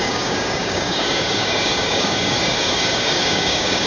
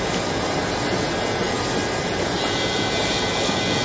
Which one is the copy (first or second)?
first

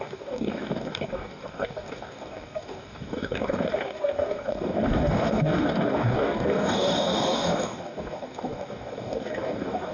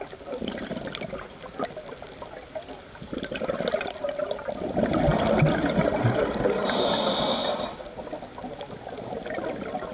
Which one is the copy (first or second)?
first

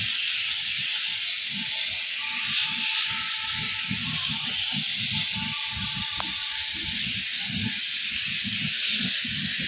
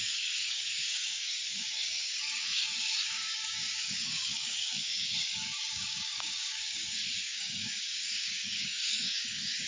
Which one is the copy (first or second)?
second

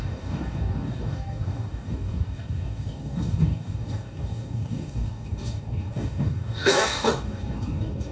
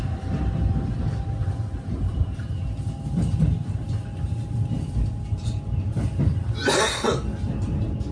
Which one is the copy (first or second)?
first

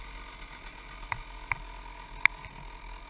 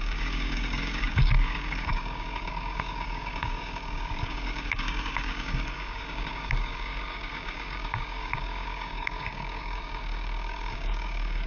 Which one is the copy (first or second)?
second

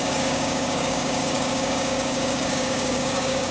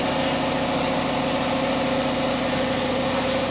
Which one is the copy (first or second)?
first